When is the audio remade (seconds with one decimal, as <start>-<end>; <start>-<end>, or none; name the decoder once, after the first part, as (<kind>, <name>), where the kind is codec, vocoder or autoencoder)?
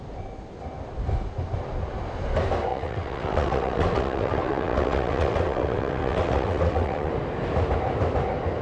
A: 2.7-7.1 (vocoder, WaveNeXt)